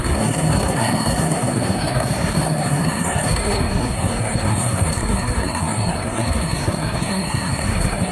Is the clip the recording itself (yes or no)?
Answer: no